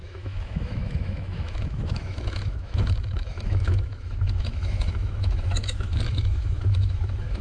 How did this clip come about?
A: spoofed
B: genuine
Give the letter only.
A